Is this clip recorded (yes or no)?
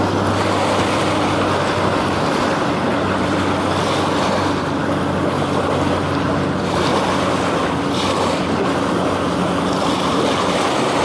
yes